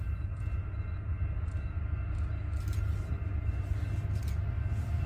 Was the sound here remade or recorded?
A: recorded